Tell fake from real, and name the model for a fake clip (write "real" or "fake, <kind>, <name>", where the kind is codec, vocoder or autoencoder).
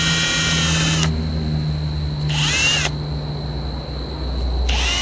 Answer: real